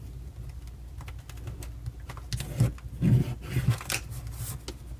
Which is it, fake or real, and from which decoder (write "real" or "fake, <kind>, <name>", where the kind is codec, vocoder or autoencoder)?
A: real